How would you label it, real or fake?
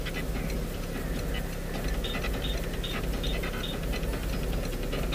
real